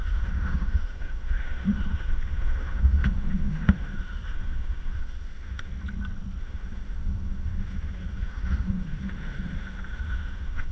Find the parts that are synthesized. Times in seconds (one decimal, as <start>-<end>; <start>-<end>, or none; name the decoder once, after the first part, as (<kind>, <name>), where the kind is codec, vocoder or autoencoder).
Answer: 0.0-5.7 (autoencoder, DAC-VAE); 6.4-10.7